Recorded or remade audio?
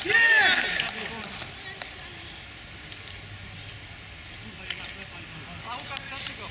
recorded